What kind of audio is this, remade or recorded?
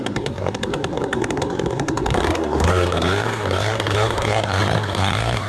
remade